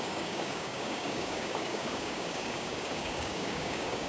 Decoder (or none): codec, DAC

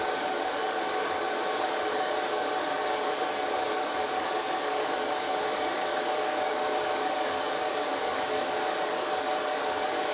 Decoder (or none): codec, DAC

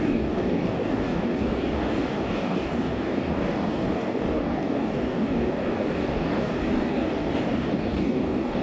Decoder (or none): codec, DAC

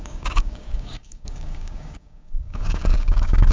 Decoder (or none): codec, DAC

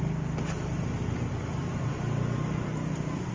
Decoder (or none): none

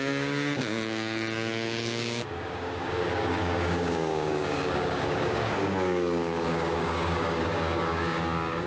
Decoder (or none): codec, DAC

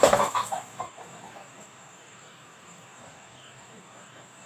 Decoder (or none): codec, DAC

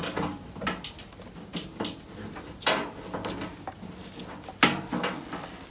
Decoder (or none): none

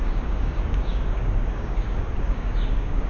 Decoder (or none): codec, DAC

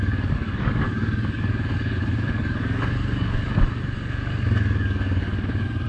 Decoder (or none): codec, DAC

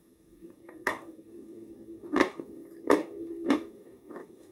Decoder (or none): codec, DAC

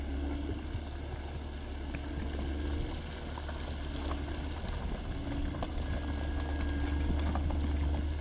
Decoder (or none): none